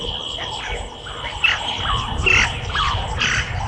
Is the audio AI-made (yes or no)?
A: no